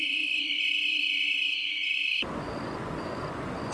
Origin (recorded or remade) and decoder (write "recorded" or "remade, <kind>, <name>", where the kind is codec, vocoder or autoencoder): remade, vocoder, Vocos